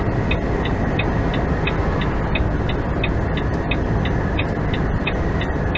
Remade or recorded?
recorded